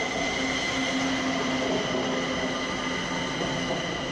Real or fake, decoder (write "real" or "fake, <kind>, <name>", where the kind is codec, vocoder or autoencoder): real